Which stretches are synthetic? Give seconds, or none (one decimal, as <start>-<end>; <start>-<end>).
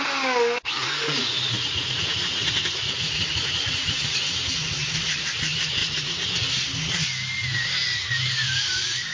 0.8-4.2; 5.8-6.3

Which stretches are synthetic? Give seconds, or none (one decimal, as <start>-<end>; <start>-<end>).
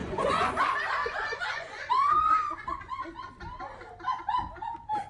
0.0-0.5; 1.0-3.3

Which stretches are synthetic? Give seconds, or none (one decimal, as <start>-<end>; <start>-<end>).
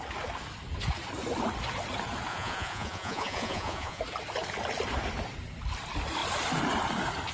2.3-4.0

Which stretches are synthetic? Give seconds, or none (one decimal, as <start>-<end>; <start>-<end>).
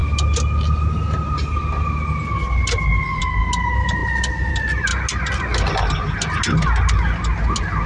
none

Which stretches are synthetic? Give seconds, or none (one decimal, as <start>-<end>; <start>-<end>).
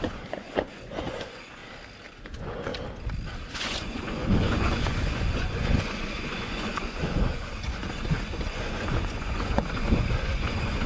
0.0-1.6; 2.1-2.7; 3.5-10.9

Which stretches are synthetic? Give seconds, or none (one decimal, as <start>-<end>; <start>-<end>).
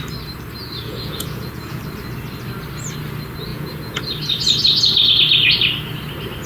0.8-1.8; 3.5-4.0